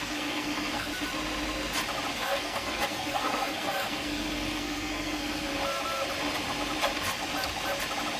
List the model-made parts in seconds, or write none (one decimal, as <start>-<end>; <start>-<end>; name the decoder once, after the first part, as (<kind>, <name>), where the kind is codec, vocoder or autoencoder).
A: 0.0-0.9 (codec, SNAC); 2.1-5.5